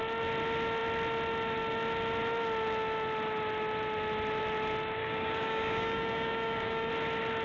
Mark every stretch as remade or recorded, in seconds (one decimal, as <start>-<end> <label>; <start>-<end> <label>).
0.0-5.0 recorded; 5.0-6.9 remade; 6.9-7.4 recorded